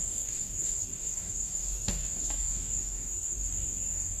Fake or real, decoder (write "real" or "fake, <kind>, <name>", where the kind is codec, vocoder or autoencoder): fake, codec, DAC